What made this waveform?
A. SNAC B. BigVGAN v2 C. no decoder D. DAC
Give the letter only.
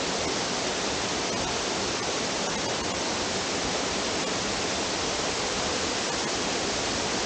C